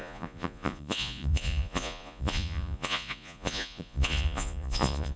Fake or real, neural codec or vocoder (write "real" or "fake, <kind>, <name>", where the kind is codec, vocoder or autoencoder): fake, vocoder, Vocos